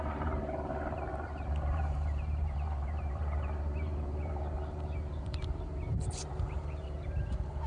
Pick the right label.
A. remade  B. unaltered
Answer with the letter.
A